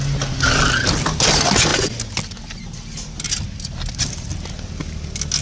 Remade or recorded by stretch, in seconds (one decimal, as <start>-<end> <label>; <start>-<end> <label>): 0.0-5.4 recorded